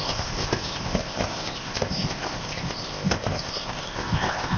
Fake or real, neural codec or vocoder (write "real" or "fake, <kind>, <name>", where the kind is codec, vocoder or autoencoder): fake, codec, ZipCodec